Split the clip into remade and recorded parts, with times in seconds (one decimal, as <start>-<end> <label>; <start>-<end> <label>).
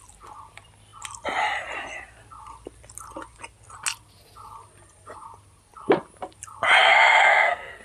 0.0-6.8 recorded; 6.8-7.8 remade